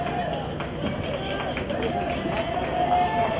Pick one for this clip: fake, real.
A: real